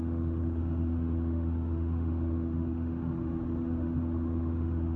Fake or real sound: fake